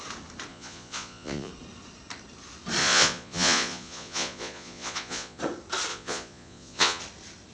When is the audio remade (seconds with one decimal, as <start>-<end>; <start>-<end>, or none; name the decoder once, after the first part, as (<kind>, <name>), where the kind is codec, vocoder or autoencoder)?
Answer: 0.5-1.5 (vocoder, Vocos); 2.8-5.4; 5.9-7.0